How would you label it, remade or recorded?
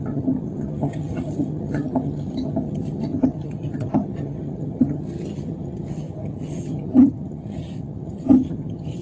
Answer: remade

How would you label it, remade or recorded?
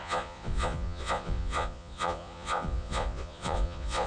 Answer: remade